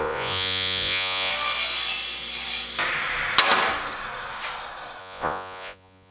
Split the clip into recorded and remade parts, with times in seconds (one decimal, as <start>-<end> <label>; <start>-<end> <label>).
0.0-1.3 remade; 1.3-5.0 recorded; 5.0-6.1 remade